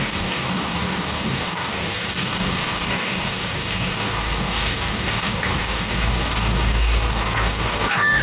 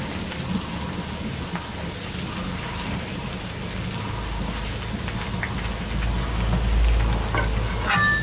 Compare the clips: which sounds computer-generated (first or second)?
first